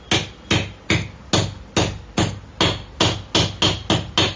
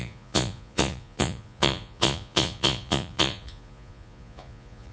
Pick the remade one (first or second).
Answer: second